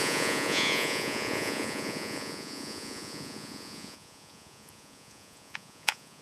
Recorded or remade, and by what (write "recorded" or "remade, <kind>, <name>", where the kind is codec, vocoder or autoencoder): remade, vocoder, Vocos